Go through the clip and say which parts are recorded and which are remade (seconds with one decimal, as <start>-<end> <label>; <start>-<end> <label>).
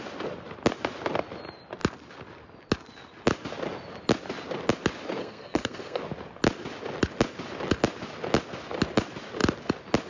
0.0-5.2 recorded; 5.2-6.0 remade; 6.0-10.1 recorded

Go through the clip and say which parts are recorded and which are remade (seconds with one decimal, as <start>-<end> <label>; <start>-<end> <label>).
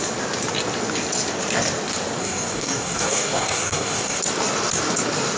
0.0-2.2 recorded; 2.2-4.2 remade; 4.2-5.4 recorded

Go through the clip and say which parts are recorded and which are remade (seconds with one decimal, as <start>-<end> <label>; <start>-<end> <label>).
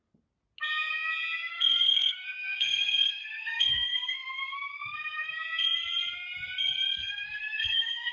0.0-1.5 recorded; 1.5-5.3 remade; 5.3-7.0 recorded; 7.0-8.1 remade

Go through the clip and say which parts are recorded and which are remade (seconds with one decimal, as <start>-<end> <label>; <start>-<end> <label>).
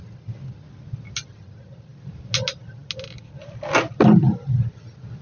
0.0-5.2 recorded